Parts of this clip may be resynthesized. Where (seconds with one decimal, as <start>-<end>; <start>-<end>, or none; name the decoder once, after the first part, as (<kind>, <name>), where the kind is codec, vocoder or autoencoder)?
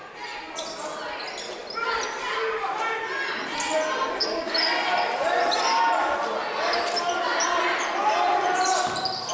none